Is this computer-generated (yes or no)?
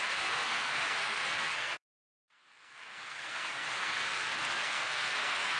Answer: yes